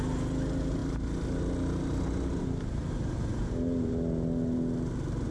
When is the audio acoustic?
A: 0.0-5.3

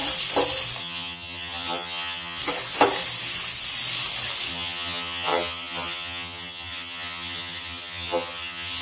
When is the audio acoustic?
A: 0.0-0.8; 2.4-4.5

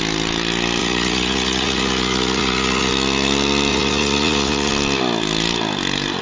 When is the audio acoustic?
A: 0.0-0.8; 2.9-3.7; 4.7-6.2

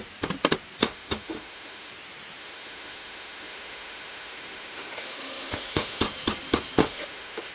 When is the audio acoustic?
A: 0.0-0.8; 1.9-2.4; 6.0-6.8

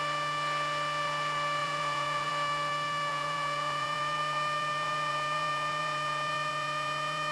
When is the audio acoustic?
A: 0.0-1.6; 2.3-3.1

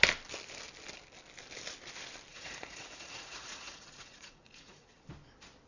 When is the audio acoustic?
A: 0.0-2.3; 5.0-5.7

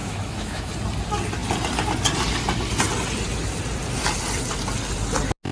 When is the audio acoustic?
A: 0.7-5.5

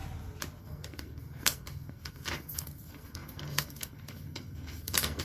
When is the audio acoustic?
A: 0.0-0.6